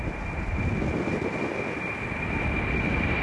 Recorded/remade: recorded